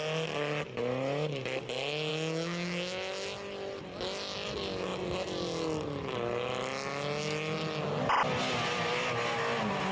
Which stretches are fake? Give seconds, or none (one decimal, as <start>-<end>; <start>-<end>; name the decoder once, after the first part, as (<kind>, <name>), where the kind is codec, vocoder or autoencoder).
2.1-3.1 (autoencoder, DAC-VAE)